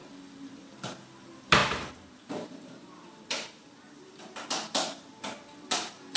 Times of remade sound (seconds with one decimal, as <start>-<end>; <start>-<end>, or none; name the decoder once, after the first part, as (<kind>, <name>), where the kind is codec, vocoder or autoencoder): 1.6-4.3 (vocoder, BigVGAN v2)